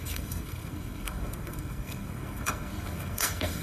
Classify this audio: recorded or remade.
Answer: remade